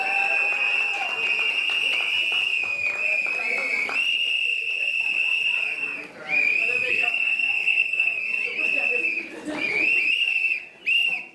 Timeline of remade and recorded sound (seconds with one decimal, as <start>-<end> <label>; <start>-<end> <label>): 0.0-6.9 recorded; 6.9-8.2 remade; 8.2-11.3 recorded